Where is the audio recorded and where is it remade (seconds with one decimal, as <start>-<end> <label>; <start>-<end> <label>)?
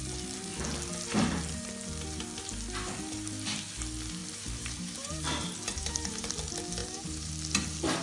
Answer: 0.0-4.2 recorded; 4.2-6.3 remade; 6.3-6.8 recorded; 6.8-7.3 remade; 7.3-8.0 recorded